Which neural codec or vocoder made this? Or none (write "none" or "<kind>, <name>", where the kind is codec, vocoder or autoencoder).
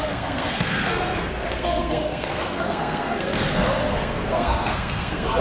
codec, SNAC